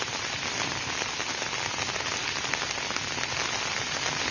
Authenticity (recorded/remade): recorded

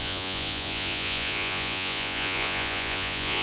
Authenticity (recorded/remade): remade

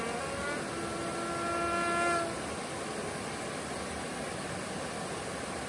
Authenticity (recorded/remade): recorded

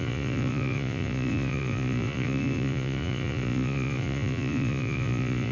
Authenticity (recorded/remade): remade